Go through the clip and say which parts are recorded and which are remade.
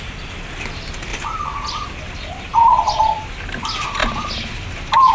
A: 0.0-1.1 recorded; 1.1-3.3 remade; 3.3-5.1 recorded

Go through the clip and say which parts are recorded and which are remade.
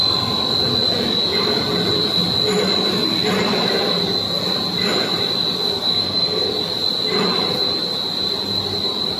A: 0.0-5.8 recorded; 5.8-6.5 remade; 6.5-9.2 recorded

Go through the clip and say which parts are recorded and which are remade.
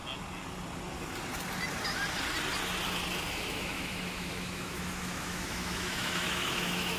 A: 0.0-3.3 recorded; 3.3-7.0 remade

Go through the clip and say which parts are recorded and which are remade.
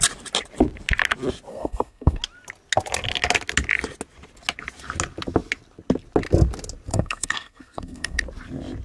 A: 0.0-1.5 recorded; 1.5-2.2 remade; 2.2-6.9 recorded; 6.9-8.2 remade; 8.2-8.8 recorded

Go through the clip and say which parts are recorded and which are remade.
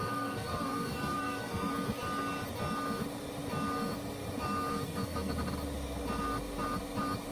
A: 0.0-1.7 remade; 1.7-4.7 recorded; 4.7-5.3 remade; 5.3-7.3 recorded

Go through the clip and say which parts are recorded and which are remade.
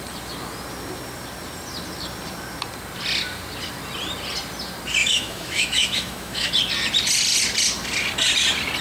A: 0.0-5.0 recorded; 5.0-6.5 remade; 6.5-8.8 recorded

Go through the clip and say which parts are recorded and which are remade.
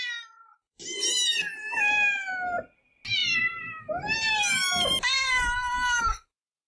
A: 0.0-6.7 recorded